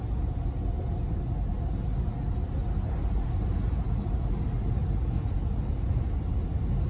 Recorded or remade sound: recorded